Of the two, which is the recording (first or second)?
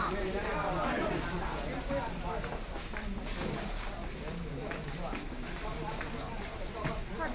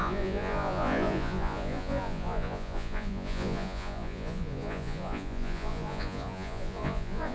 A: first